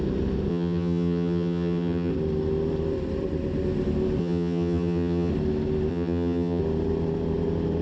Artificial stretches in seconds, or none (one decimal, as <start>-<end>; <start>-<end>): 0.5-2.1; 4.2-5.3; 5.9-6.6